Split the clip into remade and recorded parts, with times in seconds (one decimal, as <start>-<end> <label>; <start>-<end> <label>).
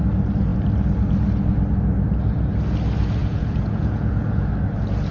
0.0-3.2 recorded; 3.2-4.5 remade; 4.5-5.1 recorded